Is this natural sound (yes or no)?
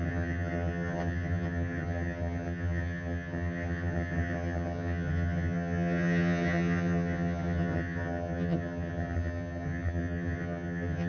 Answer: no